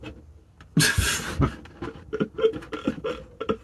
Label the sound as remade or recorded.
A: recorded